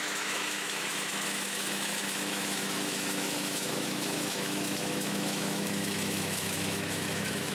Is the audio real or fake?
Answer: fake